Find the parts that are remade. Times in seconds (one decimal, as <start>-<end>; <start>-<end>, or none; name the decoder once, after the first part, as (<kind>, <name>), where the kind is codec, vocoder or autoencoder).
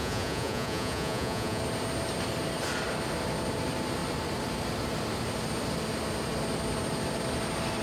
0.0-1.6 (vocoder, Vocos)